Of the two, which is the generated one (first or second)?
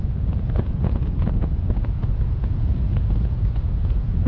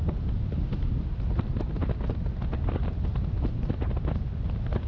first